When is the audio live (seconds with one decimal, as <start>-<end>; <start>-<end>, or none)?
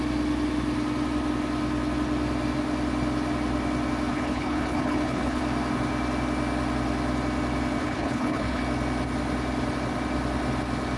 0.0-4.1; 5.4-7.8; 8.6-11.0